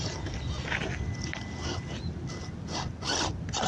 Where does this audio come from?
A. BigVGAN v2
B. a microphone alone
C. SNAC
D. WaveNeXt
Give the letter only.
B